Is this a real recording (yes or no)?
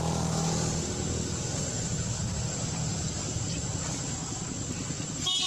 yes